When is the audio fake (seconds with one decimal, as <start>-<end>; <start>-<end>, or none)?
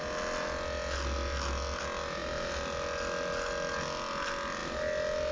none